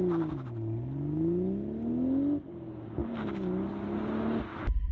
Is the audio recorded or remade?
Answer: recorded